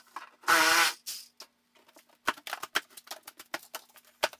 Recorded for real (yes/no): yes